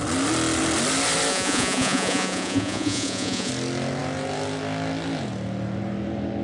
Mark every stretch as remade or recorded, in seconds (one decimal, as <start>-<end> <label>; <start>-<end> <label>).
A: 0.0-1.3 recorded; 1.3-3.5 remade; 3.5-6.4 recorded